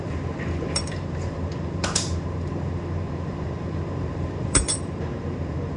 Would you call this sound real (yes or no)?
no